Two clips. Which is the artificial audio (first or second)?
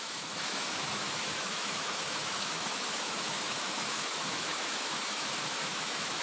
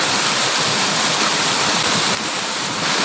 first